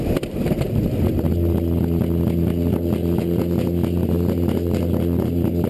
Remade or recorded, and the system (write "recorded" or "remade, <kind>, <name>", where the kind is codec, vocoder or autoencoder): recorded